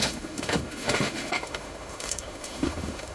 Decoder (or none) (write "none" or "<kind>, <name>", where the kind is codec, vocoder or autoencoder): autoencoder, DAC-VAE